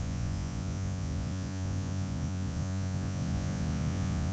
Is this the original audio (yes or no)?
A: no